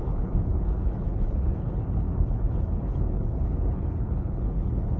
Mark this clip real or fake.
fake